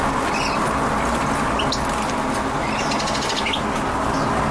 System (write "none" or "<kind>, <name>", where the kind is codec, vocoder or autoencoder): none